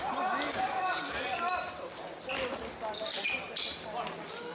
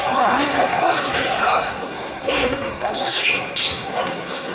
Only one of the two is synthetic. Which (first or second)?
second